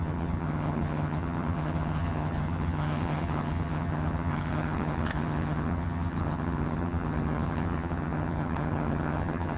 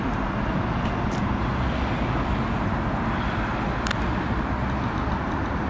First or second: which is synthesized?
first